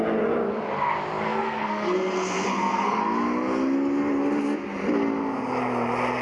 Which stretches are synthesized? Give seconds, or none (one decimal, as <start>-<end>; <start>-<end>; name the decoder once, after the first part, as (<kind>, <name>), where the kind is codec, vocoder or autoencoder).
1.3-3.0 (codec, SNAC)